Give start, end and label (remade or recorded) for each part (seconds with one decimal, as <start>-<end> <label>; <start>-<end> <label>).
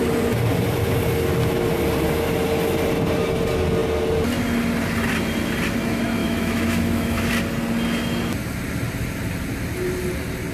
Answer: 0.0-6.2 recorded; 6.2-7.3 remade; 7.3-10.5 recorded